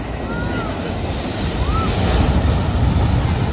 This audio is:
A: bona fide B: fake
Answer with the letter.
A